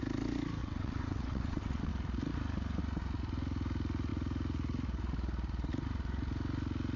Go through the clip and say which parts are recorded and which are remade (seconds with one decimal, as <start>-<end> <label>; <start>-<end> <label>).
0.0-0.6 recorded; 0.6-1.9 remade; 1.9-7.0 recorded